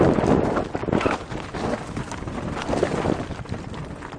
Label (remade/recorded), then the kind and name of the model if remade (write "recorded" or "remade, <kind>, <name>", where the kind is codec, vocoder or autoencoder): recorded